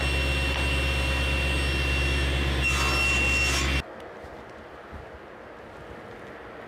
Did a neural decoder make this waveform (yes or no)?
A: no